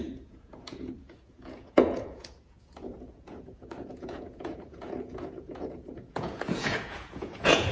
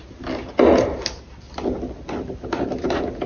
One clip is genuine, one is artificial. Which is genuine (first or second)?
second